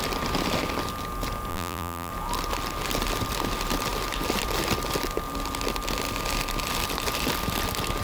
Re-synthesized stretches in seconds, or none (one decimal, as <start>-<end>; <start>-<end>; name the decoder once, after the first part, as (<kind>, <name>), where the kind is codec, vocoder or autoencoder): 1.5-2.1 (vocoder, BigVGAN v2)